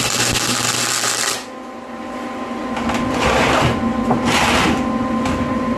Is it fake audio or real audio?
real